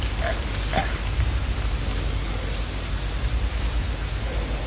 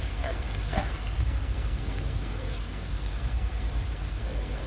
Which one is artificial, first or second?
second